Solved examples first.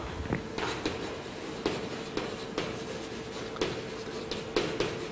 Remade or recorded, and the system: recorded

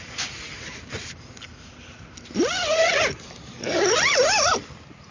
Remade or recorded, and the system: recorded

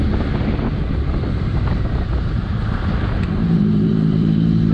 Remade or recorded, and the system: remade, vocoder, BigVGAN v2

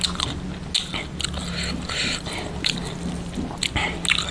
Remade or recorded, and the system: recorded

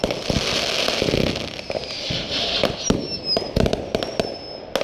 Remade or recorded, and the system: recorded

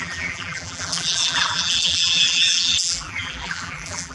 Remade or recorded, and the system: remade, vocoder, BigVGAN v2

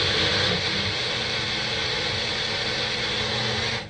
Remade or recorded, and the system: recorded